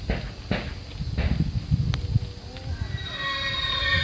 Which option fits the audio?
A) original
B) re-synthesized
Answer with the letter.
A